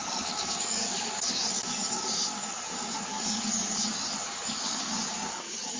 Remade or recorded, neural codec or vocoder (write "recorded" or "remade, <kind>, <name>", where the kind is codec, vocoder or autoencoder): remade, codec, DAC